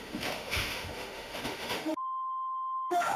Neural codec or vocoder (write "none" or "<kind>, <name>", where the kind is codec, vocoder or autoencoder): autoencoder, DAC-VAE